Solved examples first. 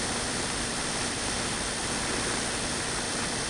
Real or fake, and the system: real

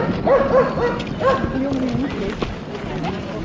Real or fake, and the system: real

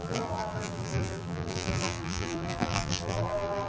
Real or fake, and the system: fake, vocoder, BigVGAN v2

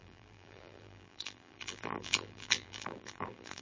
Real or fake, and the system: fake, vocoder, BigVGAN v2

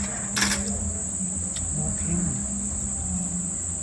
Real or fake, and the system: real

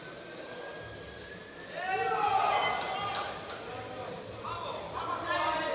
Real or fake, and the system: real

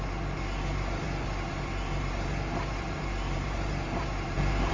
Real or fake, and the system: fake, vocoder, BigVGAN v2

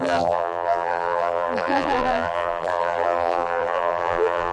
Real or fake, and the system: fake, vocoder, BigVGAN v2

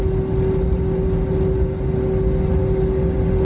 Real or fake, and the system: real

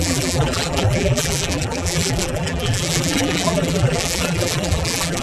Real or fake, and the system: fake, vocoder, BigVGAN v2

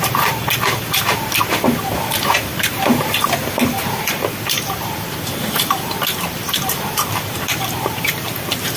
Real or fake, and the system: fake, vocoder, BigVGAN v2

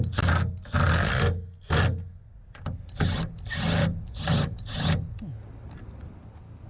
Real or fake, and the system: real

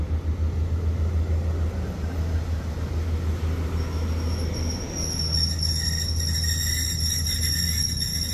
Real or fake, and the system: real